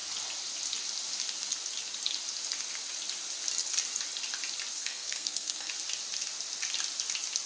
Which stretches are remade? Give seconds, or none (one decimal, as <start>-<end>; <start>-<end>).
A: 4.7-5.7